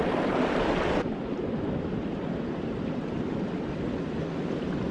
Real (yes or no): yes